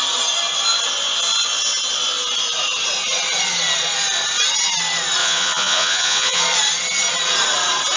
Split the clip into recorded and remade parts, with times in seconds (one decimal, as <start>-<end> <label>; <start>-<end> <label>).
0.0-5.2 recorded; 5.2-6.4 remade; 6.4-8.0 recorded